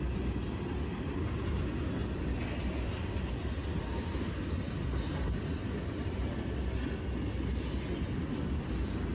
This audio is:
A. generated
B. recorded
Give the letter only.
B